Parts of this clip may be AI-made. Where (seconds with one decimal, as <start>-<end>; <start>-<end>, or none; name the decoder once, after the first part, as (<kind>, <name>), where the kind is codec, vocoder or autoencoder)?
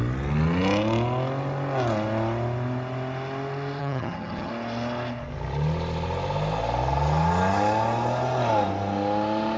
3.8-4.5 (vocoder, HiFi-GAN)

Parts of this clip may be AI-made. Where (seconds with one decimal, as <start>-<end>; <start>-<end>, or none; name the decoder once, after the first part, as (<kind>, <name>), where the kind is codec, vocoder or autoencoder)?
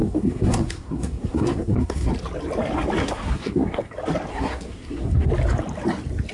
0.0-2.1 (codec, SNAC); 3.0-3.9; 4.3-5.3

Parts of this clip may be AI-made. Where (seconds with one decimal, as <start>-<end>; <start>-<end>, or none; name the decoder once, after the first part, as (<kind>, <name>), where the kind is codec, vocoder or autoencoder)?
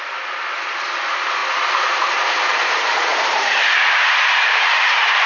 3.1-5.3 (vocoder, BigVGAN v2)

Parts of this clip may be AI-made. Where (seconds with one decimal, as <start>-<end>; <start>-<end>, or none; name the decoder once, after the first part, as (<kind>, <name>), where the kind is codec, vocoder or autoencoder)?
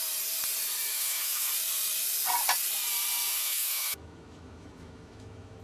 0.9-1.5 (autoencoder, DAC-VAE); 3.3-5.6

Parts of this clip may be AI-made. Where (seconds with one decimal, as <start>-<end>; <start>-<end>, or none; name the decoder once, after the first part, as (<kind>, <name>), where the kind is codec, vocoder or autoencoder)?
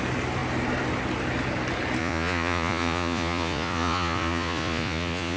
2.0-5.4 (vocoder, Vocos)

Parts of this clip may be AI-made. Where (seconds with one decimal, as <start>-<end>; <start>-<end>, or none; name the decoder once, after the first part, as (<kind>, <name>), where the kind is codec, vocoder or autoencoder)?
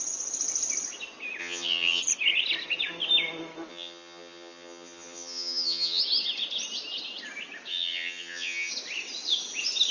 1.4-2.0 (vocoder, HiFi-GAN); 3.7-6.0; 7.7-8.7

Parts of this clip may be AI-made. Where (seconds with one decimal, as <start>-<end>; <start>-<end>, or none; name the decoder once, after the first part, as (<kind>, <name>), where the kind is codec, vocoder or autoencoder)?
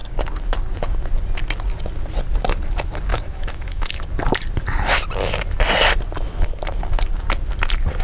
3.1-4.0 (autoencoder, DAC-VAE)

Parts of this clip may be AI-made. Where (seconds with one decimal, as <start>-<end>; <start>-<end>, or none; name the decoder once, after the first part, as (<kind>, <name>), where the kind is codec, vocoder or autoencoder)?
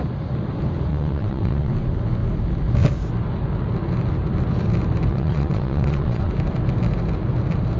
0.9-1.7 (vocoder, WaveNeXt); 5.1-6.3